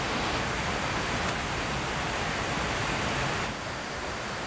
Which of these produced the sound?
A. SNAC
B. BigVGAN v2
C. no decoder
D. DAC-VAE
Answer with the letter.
C